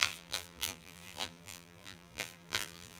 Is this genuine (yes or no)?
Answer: no